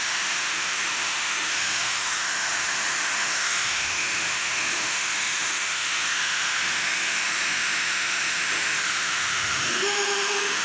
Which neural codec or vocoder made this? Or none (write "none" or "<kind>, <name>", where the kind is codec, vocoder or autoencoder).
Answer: autoencoder, DAC-VAE